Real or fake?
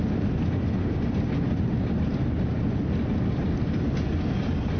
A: real